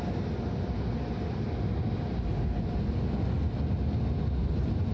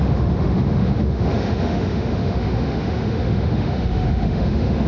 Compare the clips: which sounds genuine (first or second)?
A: first